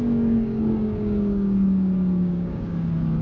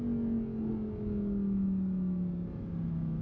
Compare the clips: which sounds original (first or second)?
second